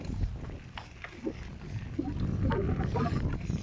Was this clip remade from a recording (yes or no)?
no